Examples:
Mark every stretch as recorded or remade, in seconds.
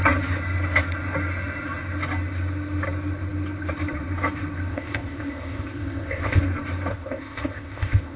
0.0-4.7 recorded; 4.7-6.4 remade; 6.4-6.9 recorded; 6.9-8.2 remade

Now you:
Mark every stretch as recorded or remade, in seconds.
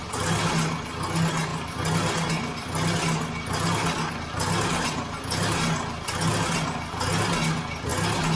0.0-8.4 recorded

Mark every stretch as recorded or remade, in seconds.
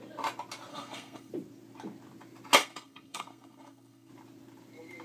0.0-0.7 recorded; 0.7-1.3 remade; 1.3-2.6 recorded; 2.6-4.1 remade; 4.1-5.0 recorded